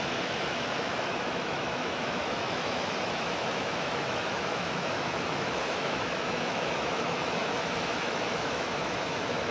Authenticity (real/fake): fake